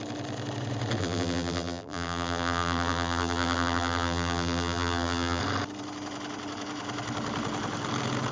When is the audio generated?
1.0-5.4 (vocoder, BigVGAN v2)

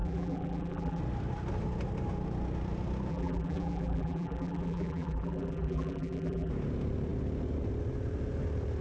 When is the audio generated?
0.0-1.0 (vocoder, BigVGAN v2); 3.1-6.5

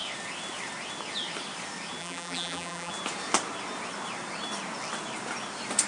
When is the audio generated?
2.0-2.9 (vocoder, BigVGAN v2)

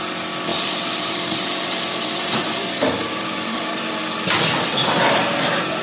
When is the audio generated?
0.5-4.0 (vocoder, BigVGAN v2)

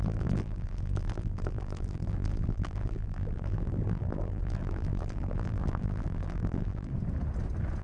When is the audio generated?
0.0-6.9 (vocoder, BigVGAN v2)

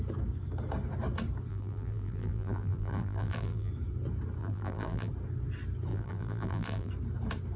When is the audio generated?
1.5-3.7 (vocoder, BigVGAN v2); 4.4-5.1; 5.9-6.9